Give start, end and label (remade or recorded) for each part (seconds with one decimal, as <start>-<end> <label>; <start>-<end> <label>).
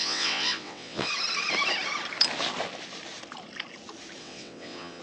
0.0-1.1 remade; 1.1-4.2 recorded; 4.2-5.0 remade